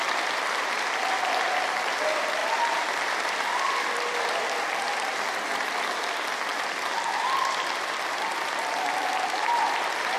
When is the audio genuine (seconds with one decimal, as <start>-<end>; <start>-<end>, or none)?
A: 0.0-2.4; 4.8-6.5